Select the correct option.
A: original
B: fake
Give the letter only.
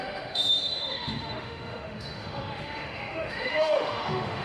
B